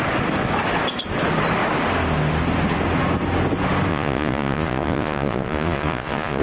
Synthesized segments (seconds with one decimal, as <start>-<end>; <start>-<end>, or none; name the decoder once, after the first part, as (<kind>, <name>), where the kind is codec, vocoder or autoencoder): 3.9-6.4 (vocoder, Vocos)